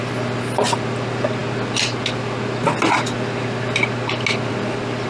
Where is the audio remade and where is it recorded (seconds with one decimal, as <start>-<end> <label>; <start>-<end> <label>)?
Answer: 0.0-5.1 recorded